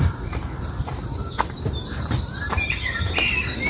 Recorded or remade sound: remade